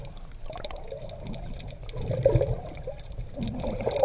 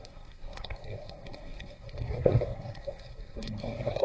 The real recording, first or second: first